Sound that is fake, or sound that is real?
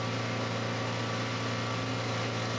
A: real